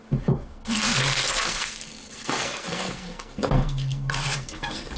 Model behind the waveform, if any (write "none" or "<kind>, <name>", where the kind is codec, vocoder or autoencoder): codec, SNAC